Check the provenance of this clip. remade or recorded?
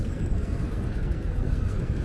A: remade